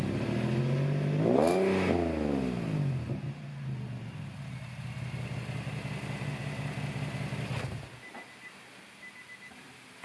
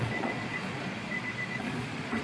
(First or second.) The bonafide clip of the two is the first